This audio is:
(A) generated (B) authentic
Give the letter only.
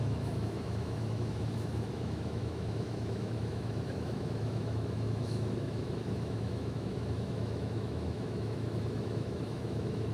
A